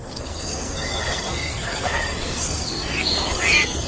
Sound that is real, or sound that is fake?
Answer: fake